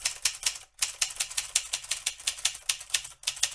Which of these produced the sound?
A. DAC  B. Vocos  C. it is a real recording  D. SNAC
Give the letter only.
C